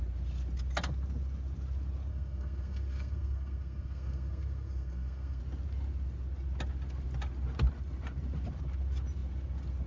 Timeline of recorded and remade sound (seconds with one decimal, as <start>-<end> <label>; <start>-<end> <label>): 0.0-2.1 recorded; 2.1-5.4 remade; 5.4-9.9 recorded